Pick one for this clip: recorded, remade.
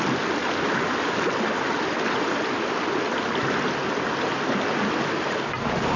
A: recorded